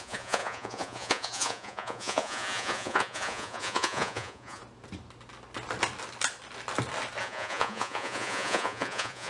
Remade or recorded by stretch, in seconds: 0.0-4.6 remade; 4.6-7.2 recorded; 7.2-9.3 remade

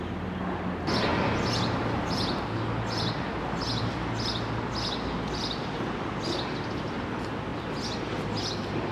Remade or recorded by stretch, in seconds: 0.0-8.9 recorded

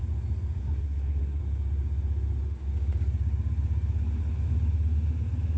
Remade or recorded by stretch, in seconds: 0.0-0.6 recorded; 0.6-1.4 remade; 1.4-5.6 recorded

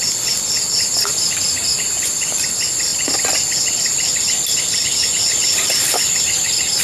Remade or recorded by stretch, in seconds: 0.0-6.8 recorded

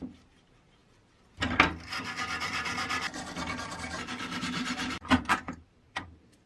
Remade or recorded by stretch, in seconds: 0.0-0.8 remade; 0.8-3.7 recorded; 3.7-6.5 remade

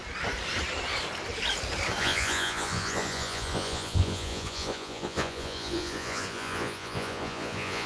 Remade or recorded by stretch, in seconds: 0.0-2.0 recorded; 2.0-7.9 remade

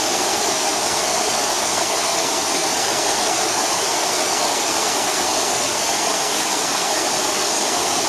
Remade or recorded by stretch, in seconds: 0.0-8.1 remade

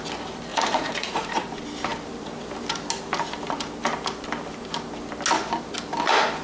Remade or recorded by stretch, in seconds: 0.0-0.5 recorded; 0.5-1.5 remade; 1.5-6.4 recorded